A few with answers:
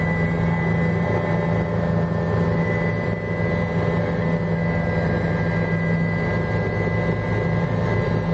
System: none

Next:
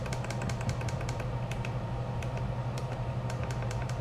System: vocoder, BigVGAN v2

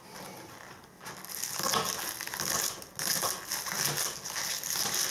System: none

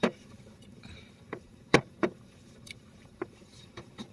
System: vocoder, BigVGAN v2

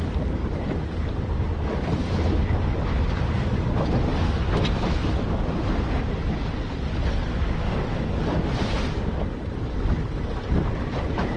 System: none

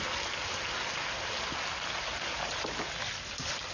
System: none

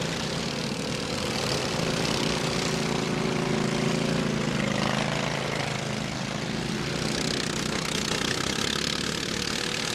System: none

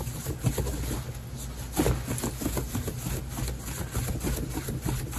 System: none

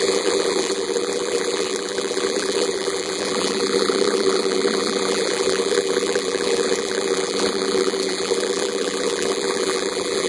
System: vocoder, BigVGAN v2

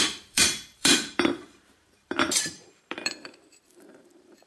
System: vocoder, BigVGAN v2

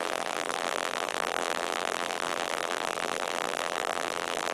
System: vocoder, BigVGAN v2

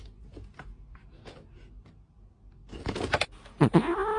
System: none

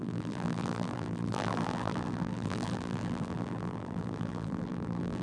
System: vocoder, BigVGAN v2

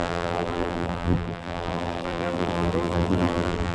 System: vocoder, BigVGAN v2